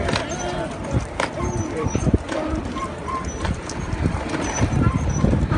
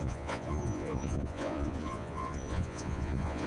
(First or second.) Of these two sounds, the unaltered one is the first